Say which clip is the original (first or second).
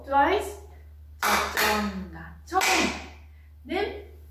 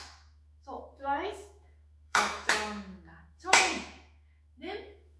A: first